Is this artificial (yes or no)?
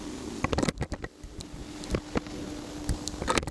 no